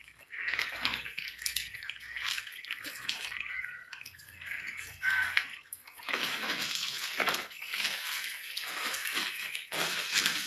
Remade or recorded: remade